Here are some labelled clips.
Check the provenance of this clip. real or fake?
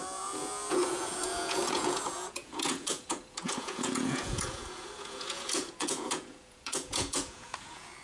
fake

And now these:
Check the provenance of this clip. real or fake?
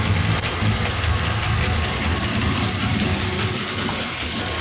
real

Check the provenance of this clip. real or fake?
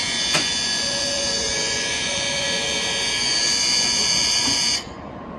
fake